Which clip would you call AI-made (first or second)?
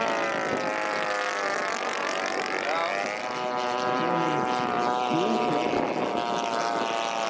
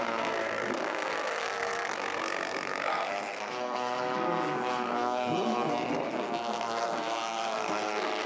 second